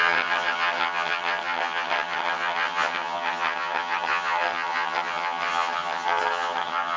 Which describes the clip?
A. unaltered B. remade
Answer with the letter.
B